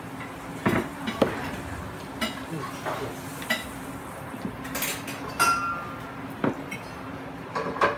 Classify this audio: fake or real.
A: real